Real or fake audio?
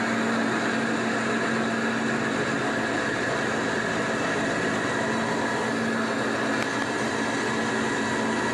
real